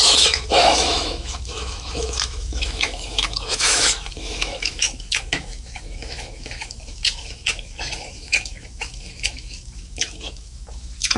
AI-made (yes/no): yes